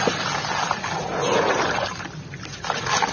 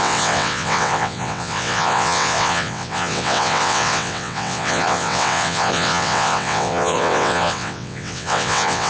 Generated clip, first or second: second